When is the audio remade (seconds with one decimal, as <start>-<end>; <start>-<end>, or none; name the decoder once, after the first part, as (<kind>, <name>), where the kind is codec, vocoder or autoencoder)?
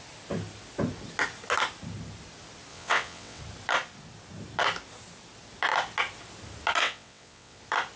2.7-3.4 (vocoder, WaveNeXt); 6.8-7.6